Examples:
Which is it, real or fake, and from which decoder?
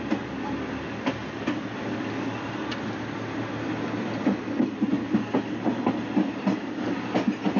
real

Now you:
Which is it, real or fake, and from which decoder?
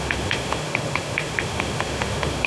fake, autoencoder, DAC-VAE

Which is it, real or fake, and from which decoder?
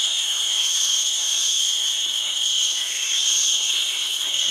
fake, codec, SNAC